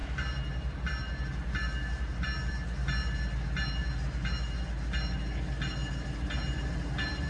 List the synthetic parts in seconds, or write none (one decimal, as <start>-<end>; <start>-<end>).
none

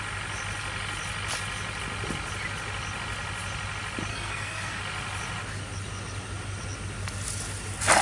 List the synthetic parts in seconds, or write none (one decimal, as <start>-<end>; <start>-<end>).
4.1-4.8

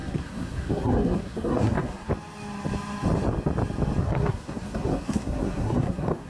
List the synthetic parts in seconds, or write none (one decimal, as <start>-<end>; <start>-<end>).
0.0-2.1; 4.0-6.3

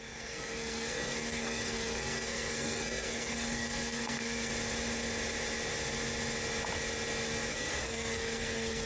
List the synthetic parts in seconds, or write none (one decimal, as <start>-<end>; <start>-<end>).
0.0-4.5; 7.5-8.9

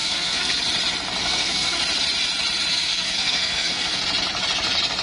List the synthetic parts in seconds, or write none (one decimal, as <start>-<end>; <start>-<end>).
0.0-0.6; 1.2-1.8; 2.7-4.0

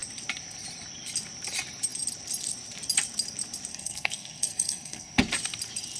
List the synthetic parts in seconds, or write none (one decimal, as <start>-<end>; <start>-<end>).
3.7-5.2